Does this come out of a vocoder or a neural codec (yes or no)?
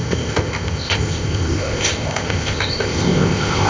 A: yes